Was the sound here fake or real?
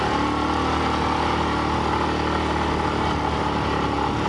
real